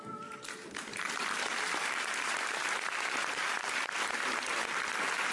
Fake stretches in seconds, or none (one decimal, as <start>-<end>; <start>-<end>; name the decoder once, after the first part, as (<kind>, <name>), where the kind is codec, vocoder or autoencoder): 0.9-4.1 (vocoder, BigVGAN v2)